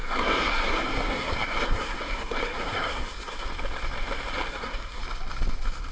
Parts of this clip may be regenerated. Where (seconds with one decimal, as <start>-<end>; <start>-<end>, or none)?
0.0-3.5; 4.5-5.0